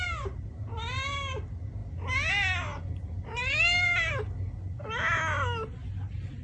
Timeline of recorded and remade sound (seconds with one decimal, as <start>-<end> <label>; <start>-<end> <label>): 0.0-6.4 recorded

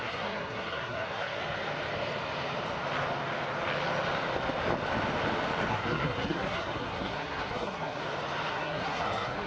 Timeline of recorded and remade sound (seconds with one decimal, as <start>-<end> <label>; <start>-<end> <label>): 0.0-1.4 remade; 1.4-5.7 recorded; 5.7-8.0 remade; 8.0-8.5 recorded; 8.5-9.5 remade